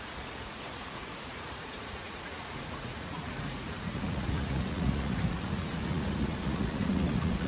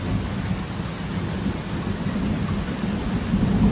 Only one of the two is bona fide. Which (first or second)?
second